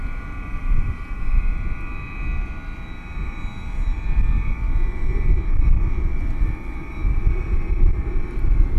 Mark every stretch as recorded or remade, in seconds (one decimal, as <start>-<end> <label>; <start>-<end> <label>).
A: 0.0-0.6 recorded; 0.6-1.2 remade; 1.2-8.8 recorded